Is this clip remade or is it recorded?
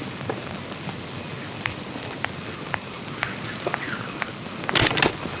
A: recorded